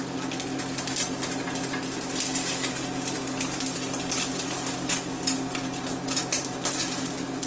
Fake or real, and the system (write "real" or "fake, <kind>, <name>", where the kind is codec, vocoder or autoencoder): real